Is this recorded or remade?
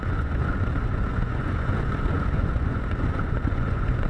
remade